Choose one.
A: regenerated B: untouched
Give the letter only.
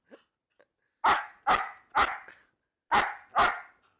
B